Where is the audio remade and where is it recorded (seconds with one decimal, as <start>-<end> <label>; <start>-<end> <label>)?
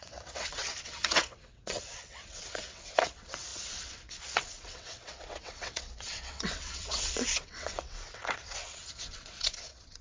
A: 0.0-10.0 remade